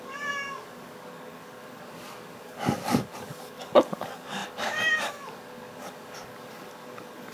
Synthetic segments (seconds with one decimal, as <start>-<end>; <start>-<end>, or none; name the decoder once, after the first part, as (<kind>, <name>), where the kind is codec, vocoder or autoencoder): 0.0-7.3 (codec, DAC)